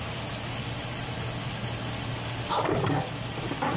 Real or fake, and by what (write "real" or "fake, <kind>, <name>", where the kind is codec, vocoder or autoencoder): real